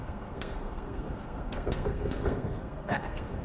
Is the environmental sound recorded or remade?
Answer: remade